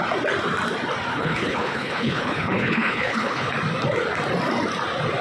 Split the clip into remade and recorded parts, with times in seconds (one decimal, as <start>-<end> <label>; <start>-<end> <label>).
0.0-1.1 recorded; 1.1-3.5 remade; 3.5-5.2 recorded